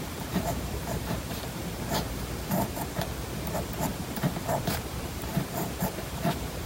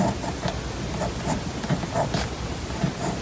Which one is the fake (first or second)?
first